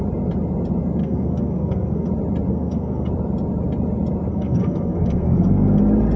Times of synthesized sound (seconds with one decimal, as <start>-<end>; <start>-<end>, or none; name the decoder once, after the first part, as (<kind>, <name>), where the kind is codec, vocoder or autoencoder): 1.0-2.1 (codec, SNAC); 2.5-3.1; 4.3-5.8